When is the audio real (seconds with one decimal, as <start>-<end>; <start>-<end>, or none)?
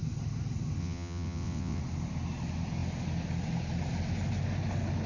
0.0-0.8; 1.8-5.1